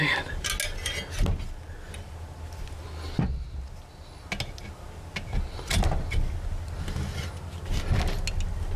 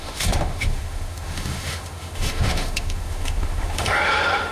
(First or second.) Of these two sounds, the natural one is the first